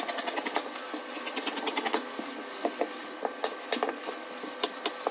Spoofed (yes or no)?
no